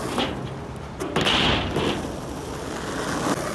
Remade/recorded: recorded